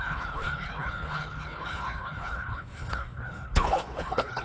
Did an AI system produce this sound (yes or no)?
yes